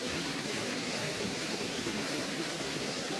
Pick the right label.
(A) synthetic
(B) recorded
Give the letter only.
A